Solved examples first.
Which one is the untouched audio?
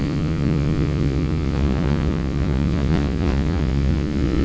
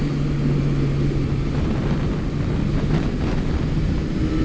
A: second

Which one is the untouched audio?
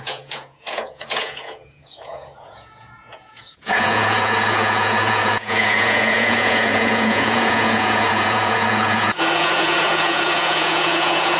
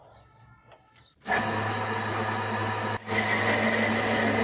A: second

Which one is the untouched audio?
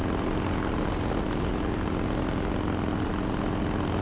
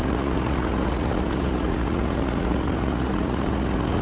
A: first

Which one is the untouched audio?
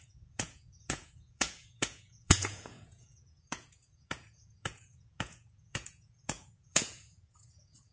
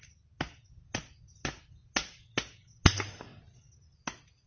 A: second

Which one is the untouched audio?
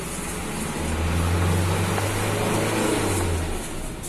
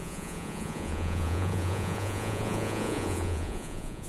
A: first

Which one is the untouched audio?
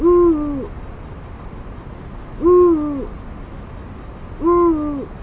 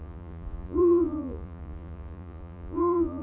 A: first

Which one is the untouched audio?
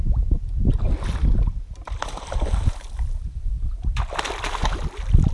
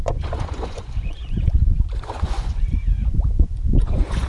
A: first